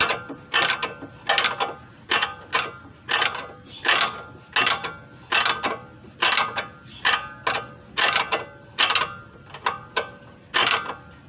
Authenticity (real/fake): real